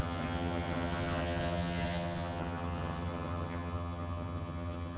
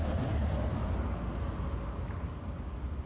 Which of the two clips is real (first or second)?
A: second